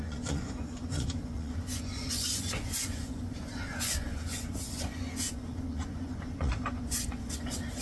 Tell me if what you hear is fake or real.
fake